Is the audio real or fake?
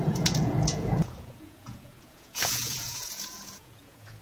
fake